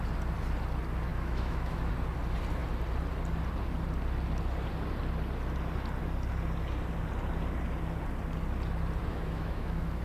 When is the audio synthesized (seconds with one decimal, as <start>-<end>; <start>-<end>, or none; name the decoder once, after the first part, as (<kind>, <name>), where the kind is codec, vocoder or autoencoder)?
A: 1.1-1.9 (autoencoder, DAC-VAE); 9.1-10.0